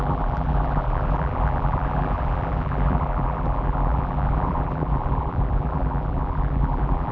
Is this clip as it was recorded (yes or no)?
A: no